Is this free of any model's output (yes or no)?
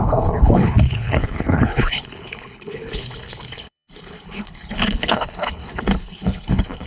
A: no